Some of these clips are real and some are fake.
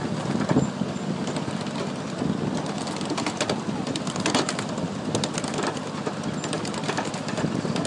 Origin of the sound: real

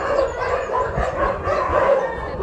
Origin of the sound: fake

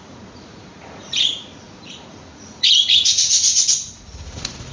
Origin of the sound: fake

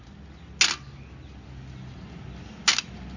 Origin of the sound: real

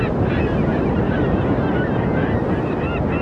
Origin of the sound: real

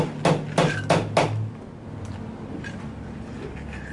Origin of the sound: real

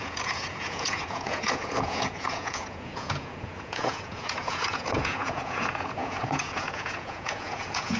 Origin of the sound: fake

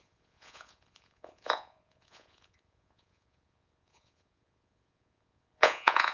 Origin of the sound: fake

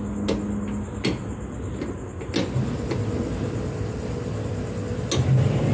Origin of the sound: real